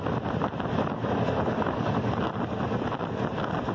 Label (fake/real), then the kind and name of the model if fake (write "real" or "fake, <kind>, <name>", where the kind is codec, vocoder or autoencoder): real